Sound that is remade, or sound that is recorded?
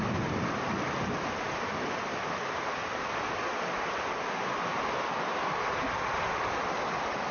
recorded